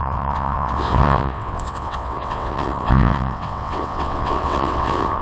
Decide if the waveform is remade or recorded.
remade